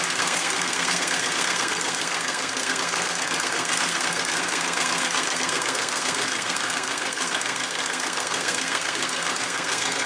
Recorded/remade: remade